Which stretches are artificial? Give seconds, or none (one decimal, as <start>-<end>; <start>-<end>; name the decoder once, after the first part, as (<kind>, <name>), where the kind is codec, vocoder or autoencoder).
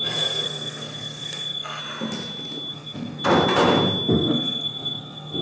0.0-1.8 (codec, SNAC); 2.7-3.2; 4.1-5.4